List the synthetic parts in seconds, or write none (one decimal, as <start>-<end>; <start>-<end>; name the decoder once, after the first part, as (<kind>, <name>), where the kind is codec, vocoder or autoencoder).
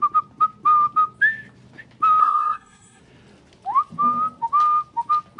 2.2-3.0 (codec, SNAC)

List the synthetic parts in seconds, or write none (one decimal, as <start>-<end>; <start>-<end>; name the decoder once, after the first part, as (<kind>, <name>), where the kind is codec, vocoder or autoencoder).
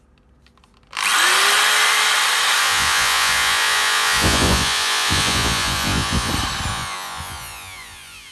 2.6-6.3 (vocoder, Vocos); 6.7-8.3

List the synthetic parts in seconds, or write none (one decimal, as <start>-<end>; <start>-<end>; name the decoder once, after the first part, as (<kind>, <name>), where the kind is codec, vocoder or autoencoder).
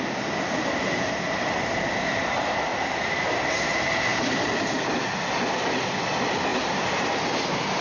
2.7-3.3 (vocoder, BigVGAN v2); 4.1-4.8; 6.5-7.8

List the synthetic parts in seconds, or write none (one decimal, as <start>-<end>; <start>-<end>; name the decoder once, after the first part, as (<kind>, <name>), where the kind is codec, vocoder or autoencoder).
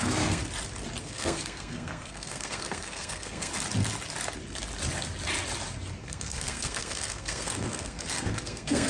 0.0-0.4 (codec, SNAC); 1.0-3.5; 6.0-8.9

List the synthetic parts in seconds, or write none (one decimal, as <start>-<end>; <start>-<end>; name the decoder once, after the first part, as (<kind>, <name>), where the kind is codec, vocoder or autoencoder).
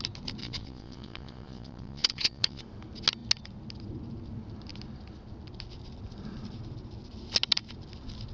0.4-2.6 (vocoder, Vocos)